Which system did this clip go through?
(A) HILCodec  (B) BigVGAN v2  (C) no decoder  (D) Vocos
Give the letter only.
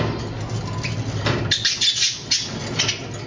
C